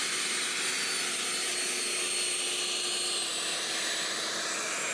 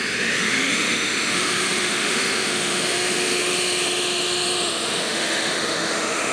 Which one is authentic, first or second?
first